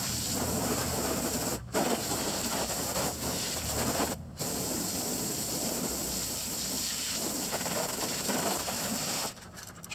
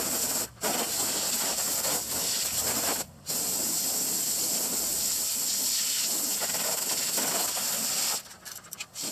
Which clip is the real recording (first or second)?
second